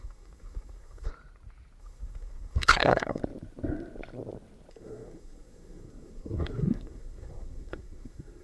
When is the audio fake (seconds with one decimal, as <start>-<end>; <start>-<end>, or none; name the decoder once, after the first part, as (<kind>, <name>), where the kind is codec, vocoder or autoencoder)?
0.0-1.1 (codec, SNAC); 1.8-3.2; 4.7-8.4